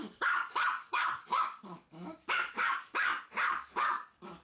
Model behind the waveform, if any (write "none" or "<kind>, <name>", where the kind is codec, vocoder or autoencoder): codec, DAC